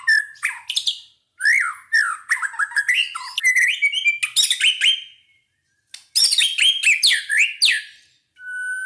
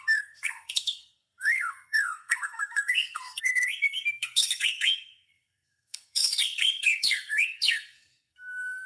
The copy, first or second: second